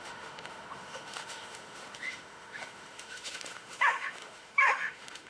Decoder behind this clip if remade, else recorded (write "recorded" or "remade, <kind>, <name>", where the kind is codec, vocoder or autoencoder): remade, autoencoder, DAC-VAE